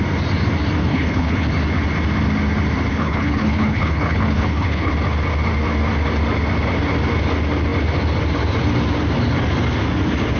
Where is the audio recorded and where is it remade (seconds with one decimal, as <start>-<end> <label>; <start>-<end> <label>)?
0.0-0.8 recorded; 0.8-1.5 remade; 1.5-2.9 recorded; 2.9-4.9 remade; 4.9-10.4 recorded